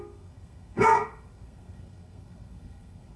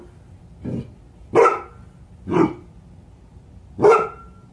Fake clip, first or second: first